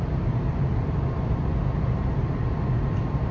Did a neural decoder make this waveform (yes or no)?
yes